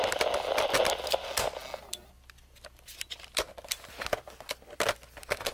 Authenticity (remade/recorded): recorded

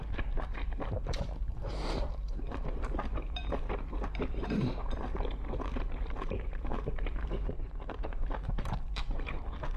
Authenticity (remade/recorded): remade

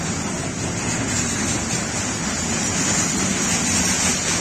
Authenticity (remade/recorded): recorded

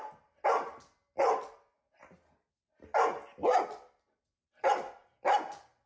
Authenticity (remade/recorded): recorded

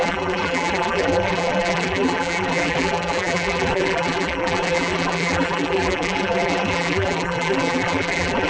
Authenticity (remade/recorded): remade